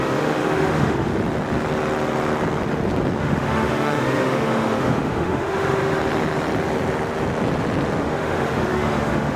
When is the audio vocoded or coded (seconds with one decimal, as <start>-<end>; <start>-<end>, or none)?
0.0-1.1; 3.2-6.0; 8.0-9.4